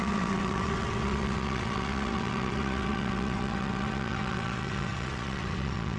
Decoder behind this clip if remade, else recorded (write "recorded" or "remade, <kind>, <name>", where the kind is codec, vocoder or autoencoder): remade, vocoder, WaveNeXt